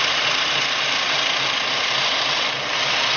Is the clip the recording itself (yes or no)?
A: yes